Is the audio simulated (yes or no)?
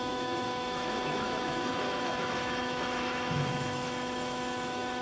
yes